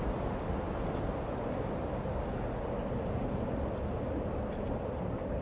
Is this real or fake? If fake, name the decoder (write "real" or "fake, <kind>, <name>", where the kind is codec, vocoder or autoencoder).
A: real